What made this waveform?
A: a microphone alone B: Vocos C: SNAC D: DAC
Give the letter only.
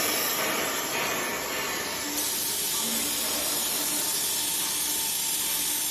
A